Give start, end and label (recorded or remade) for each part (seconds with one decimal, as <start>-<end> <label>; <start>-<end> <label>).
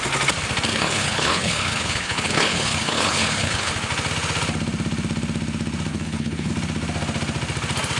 0.0-0.7 recorded; 0.7-3.7 remade; 3.7-5.9 recorded; 5.9-6.5 remade; 6.5-8.0 recorded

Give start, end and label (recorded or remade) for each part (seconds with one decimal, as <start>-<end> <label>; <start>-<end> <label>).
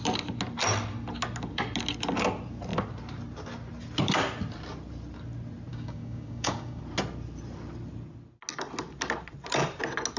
0.0-5.7 recorded; 5.7-6.8 remade; 6.8-10.2 recorded